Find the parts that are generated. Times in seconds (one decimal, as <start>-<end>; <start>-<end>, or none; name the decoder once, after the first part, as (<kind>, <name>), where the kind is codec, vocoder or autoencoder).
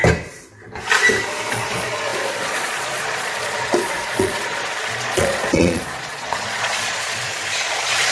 1.5-8.1 (vocoder, Vocos)